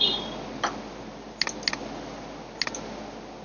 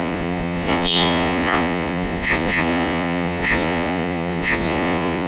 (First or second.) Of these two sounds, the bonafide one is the first